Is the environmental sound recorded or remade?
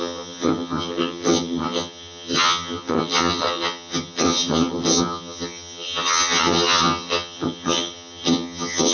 remade